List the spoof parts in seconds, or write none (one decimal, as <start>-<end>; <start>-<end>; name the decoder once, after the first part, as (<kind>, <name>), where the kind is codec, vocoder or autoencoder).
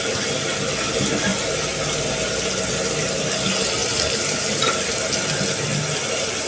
3.8-4.6 (vocoder, BigVGAN v2)